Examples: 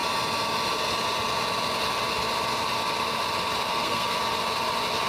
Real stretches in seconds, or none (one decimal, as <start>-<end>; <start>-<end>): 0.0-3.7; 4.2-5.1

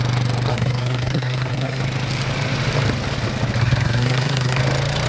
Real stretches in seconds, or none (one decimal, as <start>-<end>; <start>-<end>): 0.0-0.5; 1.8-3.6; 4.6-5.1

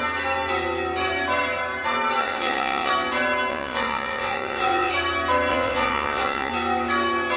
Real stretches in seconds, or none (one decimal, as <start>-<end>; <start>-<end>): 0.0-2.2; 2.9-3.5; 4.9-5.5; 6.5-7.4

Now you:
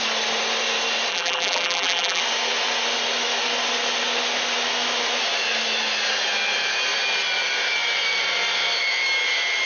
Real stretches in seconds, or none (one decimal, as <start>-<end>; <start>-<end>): 0.0-1.1; 2.2-9.7